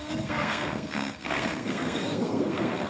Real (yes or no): no